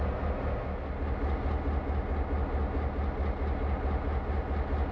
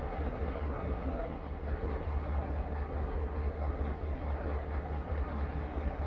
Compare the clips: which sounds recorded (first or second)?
first